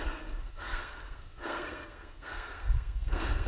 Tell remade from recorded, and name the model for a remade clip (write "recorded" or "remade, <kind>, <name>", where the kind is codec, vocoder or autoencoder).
remade, codec, SNAC